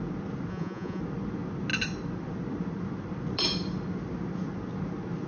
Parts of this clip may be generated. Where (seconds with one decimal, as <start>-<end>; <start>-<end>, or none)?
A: 0.5-1.0